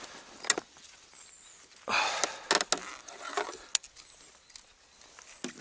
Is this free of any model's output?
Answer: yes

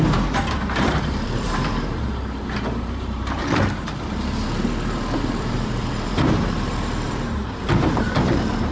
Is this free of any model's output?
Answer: no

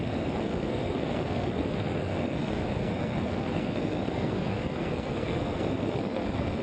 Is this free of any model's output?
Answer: no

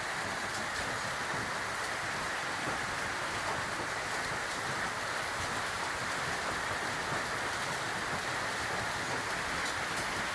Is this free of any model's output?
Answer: yes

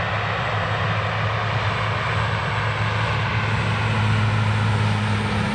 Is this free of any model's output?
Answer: yes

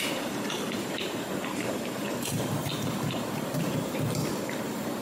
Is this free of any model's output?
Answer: no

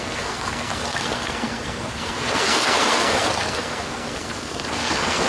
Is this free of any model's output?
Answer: no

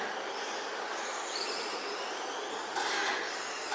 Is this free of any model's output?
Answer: yes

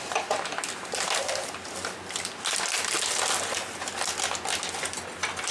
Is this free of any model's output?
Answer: yes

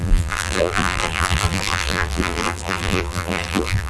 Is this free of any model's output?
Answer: no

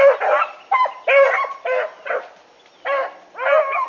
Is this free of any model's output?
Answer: yes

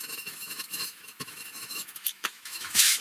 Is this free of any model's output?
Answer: no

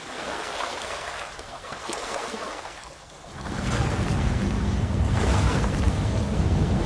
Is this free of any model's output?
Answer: no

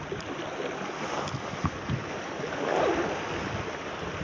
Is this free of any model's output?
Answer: yes